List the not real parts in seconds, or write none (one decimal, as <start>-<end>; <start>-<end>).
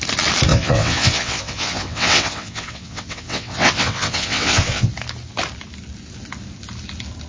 0.5-4.9